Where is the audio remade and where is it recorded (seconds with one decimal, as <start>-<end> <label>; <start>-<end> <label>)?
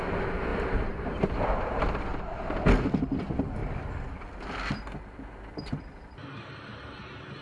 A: 0.0-0.5 recorded; 0.5-1.8 remade; 1.8-6.2 recorded; 6.2-6.7 remade; 6.7-7.4 recorded